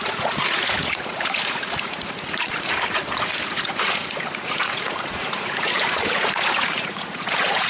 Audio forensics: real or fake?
fake